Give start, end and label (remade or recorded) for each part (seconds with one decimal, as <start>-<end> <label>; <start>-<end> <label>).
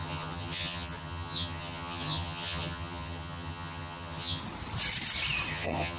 0.0-4.4 remade; 4.4-5.5 recorded; 5.5-6.0 remade